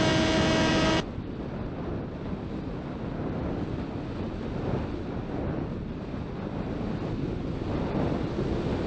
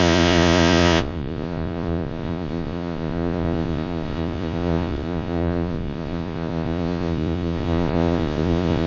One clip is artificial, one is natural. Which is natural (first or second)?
first